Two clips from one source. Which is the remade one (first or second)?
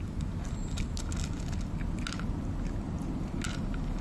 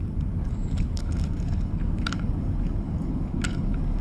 second